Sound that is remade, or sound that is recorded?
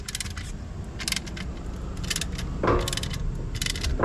recorded